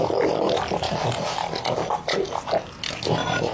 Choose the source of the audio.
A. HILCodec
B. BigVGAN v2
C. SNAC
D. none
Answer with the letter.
D